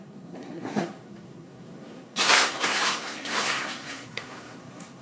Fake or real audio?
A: fake